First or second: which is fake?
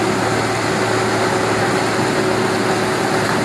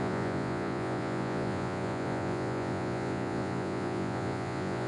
second